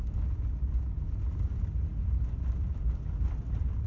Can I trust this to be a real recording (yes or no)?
yes